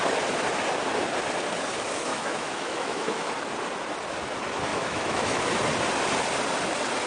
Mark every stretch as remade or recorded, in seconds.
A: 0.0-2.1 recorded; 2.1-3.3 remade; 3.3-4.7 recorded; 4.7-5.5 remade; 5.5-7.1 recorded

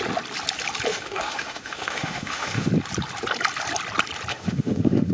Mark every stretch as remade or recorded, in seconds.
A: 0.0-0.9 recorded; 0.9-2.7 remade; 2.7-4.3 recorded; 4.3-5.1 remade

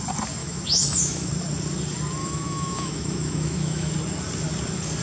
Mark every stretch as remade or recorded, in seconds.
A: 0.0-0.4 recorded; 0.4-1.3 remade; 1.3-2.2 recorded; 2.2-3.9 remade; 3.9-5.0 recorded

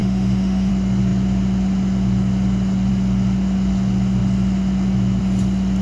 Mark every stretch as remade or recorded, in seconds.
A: 0.0-0.7 remade; 0.7-5.8 recorded

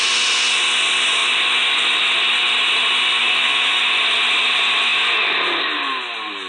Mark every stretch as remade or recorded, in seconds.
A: 0.0-3.2 recorded; 3.2-3.8 remade; 3.8-6.5 recorded

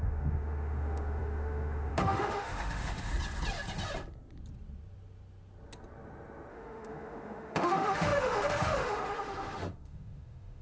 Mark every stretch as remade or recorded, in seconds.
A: 0.0-3.1 remade; 3.1-6.5 recorded; 6.5-10.6 remade